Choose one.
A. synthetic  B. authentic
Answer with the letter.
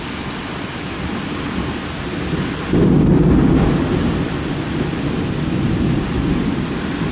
B